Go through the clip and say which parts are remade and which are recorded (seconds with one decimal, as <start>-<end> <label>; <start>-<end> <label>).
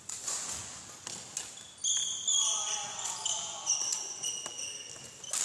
0.0-0.8 remade; 0.8-2.3 recorded; 2.3-4.4 remade; 4.4-5.4 recorded